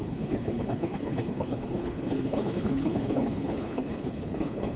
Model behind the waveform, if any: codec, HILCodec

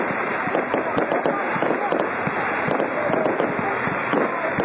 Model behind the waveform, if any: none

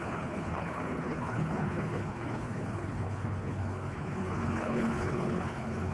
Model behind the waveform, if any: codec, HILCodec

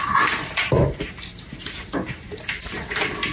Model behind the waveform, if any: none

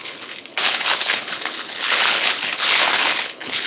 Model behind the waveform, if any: codec, HILCodec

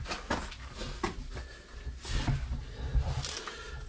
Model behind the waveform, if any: none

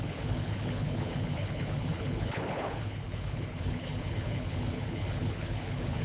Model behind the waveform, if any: codec, HILCodec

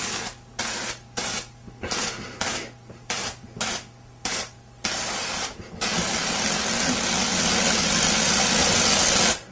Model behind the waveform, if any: none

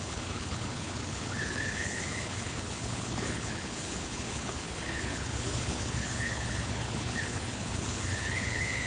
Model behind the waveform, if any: codec, HILCodec